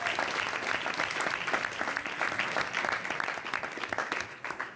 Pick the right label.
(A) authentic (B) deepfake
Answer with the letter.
A